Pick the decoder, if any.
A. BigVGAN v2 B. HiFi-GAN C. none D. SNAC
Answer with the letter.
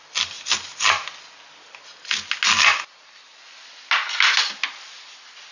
C